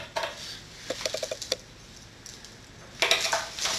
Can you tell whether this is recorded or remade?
recorded